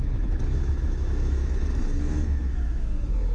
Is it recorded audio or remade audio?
remade